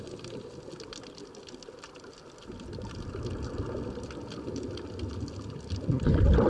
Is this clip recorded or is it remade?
recorded